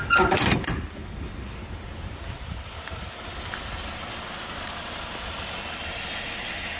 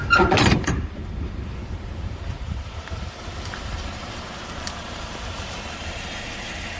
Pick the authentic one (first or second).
first